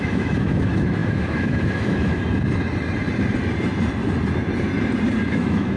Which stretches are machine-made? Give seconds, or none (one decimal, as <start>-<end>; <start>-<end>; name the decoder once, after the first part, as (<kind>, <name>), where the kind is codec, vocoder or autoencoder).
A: 0.0-2.2 (autoencoder, DAC-VAE); 5.3-5.8